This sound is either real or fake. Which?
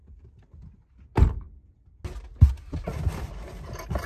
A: real